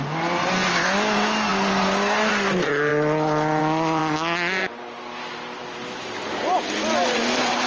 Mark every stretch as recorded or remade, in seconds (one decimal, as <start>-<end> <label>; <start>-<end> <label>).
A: 0.0-7.7 recorded